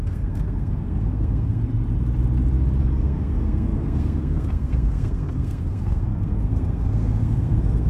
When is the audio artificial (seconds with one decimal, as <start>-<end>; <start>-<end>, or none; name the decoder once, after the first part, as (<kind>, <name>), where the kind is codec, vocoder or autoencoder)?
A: 0.0-1.6 (codec, SNAC); 2.8-7.9